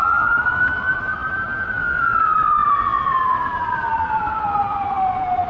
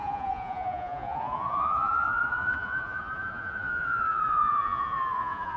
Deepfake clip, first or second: second